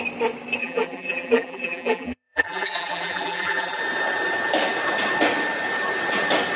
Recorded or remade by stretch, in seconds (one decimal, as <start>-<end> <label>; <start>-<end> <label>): 0.0-0.6 recorded; 0.6-3.8 remade; 3.8-6.6 recorded